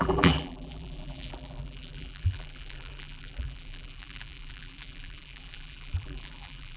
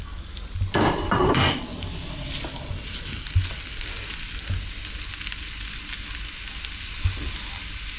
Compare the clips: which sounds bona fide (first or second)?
second